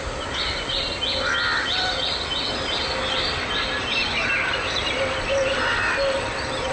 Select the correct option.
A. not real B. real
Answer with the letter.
B